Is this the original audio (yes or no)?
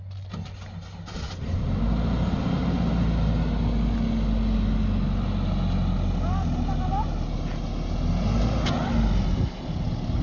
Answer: yes